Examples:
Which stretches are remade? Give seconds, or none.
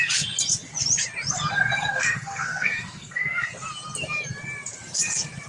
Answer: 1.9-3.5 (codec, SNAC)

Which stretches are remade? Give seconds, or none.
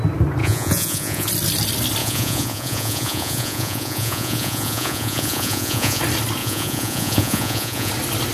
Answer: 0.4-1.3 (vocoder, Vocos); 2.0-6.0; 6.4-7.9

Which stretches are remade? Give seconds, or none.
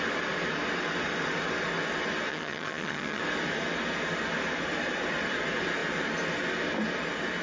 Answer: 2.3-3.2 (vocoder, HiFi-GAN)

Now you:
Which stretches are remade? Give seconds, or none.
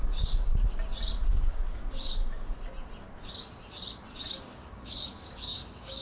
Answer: 0.0-0.5 (codec, DAC); 1.3-2.2; 4.4-6.0